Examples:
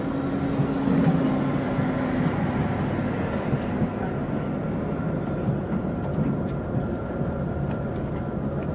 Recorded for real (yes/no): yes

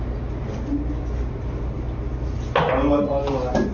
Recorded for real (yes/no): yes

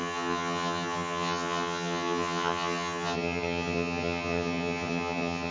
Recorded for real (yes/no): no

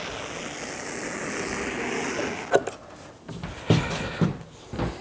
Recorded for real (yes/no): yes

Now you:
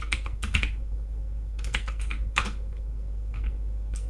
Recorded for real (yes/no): no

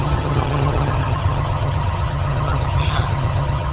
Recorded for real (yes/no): no